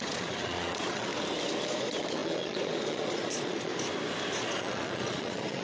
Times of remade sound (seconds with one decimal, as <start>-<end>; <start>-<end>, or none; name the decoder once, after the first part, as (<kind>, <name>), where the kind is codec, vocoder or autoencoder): 0.0-1.1 (vocoder, Vocos); 1.7-3.7; 4.4-5.6